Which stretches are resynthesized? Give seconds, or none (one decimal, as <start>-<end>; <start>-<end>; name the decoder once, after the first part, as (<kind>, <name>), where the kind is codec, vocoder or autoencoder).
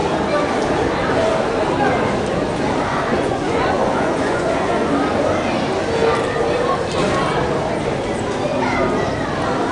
2.9-4.9 (vocoder, Vocos)